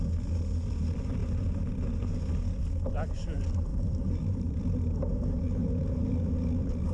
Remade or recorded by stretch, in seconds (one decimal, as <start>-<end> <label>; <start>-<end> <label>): 0.0-3.7 recorded; 3.7-4.6 remade; 4.6-5.6 recorded; 5.6-6.3 remade; 6.3-6.9 recorded